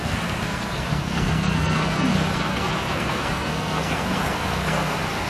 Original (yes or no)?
no